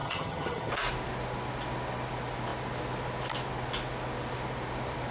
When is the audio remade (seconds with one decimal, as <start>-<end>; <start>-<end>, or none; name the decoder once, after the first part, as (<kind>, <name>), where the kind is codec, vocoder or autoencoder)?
0.0-0.7 (vocoder, HiFi-GAN)